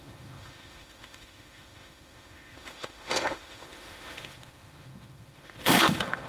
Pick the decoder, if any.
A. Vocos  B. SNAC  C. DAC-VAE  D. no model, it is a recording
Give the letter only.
C